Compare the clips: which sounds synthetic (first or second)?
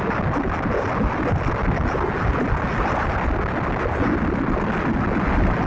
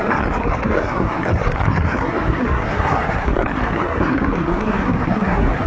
second